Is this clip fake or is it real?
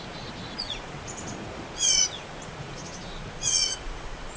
fake